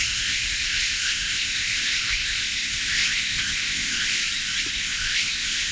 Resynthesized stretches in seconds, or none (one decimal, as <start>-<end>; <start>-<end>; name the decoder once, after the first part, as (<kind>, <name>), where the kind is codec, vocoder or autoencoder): 0.0-4.2 (codec, ZipCodec); 4.7-5.7